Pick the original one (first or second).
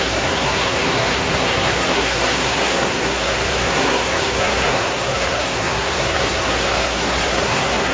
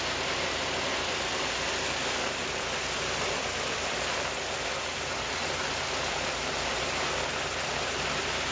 second